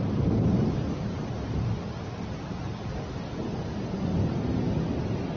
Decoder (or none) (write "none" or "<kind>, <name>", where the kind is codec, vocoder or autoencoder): none